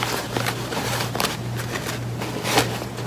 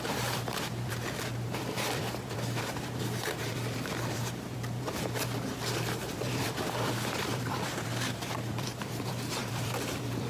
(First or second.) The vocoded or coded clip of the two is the second